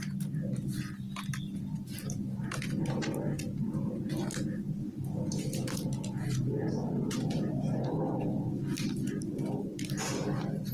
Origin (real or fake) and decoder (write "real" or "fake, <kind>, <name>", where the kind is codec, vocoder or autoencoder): real